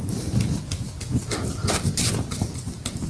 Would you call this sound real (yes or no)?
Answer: yes